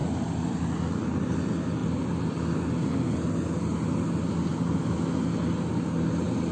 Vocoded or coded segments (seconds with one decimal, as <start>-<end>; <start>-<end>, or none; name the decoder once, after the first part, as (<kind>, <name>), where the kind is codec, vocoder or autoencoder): none

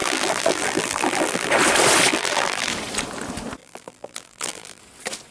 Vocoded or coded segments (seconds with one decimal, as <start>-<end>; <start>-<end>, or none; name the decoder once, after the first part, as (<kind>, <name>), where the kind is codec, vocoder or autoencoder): 0.0-1.5 (vocoder, BigVGAN v2); 2.1-2.7; 3.6-4.8